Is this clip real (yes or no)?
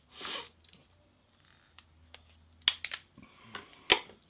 yes